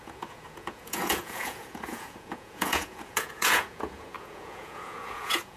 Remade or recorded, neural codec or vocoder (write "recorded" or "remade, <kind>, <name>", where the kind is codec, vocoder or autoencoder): remade, vocoder, Vocos